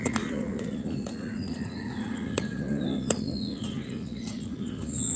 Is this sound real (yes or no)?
no